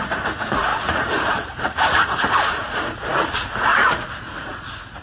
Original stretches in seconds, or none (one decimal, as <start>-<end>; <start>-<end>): none